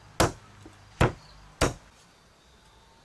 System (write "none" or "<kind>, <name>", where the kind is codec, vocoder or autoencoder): none